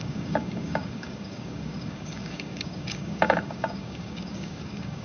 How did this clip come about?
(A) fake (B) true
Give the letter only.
A